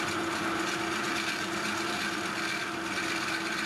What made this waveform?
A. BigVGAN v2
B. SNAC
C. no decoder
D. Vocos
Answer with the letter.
C